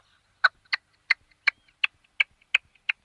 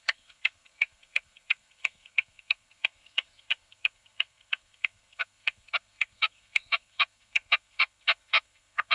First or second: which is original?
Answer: first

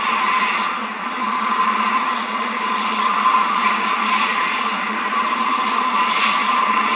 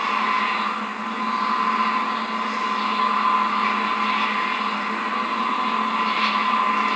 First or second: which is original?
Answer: second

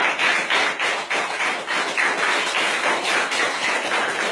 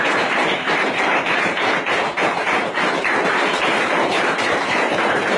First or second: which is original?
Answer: first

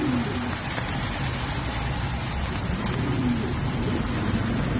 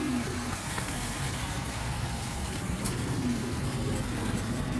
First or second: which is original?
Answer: first